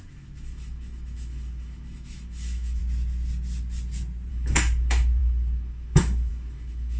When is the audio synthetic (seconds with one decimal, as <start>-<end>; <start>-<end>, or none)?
0.0-2.8; 4.3-7.0